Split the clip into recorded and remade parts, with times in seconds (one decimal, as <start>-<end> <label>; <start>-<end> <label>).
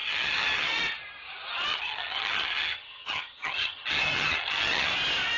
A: 0.0-0.8 remade; 0.8-1.7 recorded; 1.7-4.9 remade; 4.9-5.4 recorded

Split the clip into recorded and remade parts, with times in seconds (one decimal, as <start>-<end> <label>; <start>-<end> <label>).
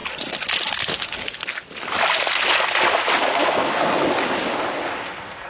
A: 0.0-3.3 recorded; 3.3-3.9 remade; 3.9-5.1 recorded; 5.1-5.5 remade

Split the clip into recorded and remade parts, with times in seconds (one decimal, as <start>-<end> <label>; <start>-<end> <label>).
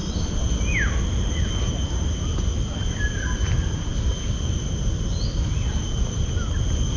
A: 0.0-7.0 recorded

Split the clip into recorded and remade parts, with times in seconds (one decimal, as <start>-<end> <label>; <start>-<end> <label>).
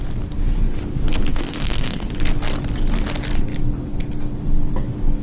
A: 0.0-1.3 recorded; 1.3-2.1 remade; 2.1-5.2 recorded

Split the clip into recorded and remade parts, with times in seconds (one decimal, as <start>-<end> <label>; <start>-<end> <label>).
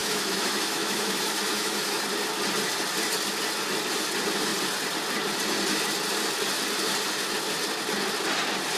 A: 0.0-2.0 remade; 2.0-8.8 recorded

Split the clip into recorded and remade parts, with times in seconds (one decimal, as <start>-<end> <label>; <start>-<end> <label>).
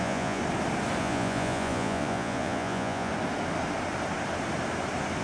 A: 0.0-0.4 remade; 0.4-1.0 recorded; 1.0-3.1 remade; 3.1-5.2 recorded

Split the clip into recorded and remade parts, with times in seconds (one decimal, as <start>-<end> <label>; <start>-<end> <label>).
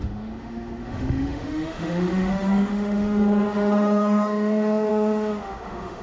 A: 0.0-6.0 remade